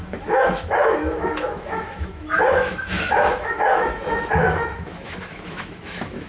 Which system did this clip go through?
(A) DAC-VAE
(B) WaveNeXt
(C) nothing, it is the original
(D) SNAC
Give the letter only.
A